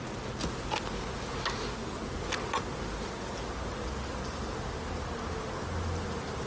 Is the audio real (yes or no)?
yes